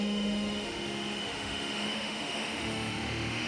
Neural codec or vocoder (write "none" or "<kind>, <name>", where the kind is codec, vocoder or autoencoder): autoencoder, DAC-VAE